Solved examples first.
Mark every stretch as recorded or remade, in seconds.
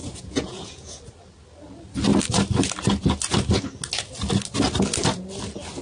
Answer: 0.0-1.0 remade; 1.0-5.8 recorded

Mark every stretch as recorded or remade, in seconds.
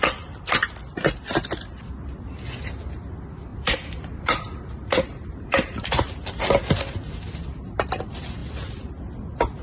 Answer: 0.0-3.5 recorded; 3.5-6.3 remade; 6.3-8.4 recorded; 8.4-8.9 remade; 8.9-9.6 recorded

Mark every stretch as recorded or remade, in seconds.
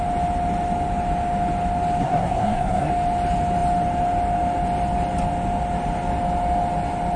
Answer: 0.0-2.0 recorded; 2.0-2.9 remade; 2.9-7.2 recorded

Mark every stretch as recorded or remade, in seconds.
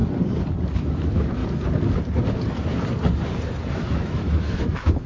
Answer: 0.0-0.7 recorded; 0.7-1.4 remade; 1.4-3.7 recorded; 3.7-5.1 remade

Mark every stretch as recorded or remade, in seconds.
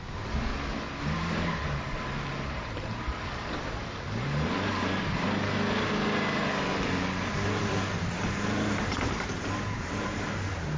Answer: 0.0-0.5 remade; 0.5-1.0 recorded; 1.0-10.8 remade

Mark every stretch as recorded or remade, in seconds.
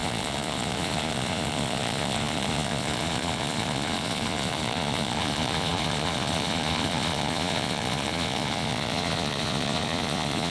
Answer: 0.0-10.5 remade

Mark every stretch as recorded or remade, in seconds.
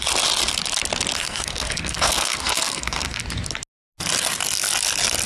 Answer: 0.0-1.2 recorded; 1.2-3.2 remade; 3.2-5.3 recorded